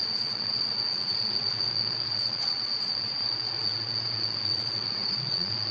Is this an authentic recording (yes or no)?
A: no